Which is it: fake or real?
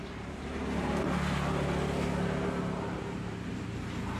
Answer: real